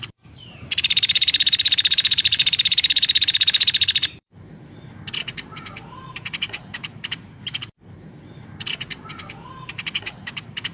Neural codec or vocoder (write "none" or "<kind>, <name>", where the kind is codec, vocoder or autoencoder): vocoder, BigVGAN v2